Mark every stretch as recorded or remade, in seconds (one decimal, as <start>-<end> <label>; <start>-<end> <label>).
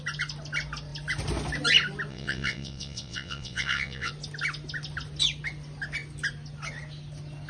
0.0-2.1 recorded; 2.1-4.1 remade; 4.1-7.5 recorded